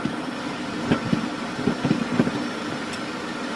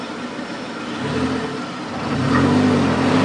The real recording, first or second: second